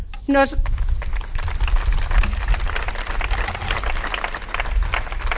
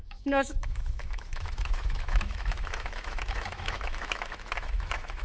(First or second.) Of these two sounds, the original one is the first